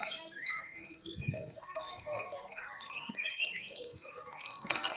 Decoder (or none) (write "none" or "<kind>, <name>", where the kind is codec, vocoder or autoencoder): codec, SNAC